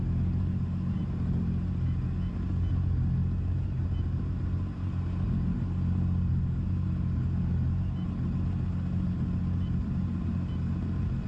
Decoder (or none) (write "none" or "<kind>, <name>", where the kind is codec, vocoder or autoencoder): none